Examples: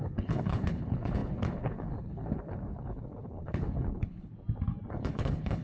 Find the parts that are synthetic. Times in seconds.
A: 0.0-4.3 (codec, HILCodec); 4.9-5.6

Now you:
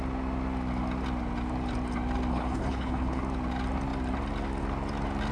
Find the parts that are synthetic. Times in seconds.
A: 2.3-3.2 (codec, HILCodec)

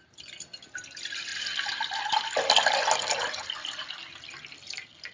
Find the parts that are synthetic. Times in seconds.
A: none